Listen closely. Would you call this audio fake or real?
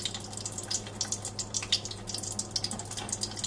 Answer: real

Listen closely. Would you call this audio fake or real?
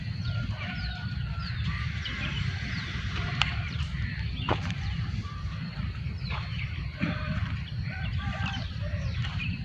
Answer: fake